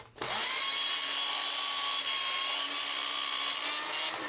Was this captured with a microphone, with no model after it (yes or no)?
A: yes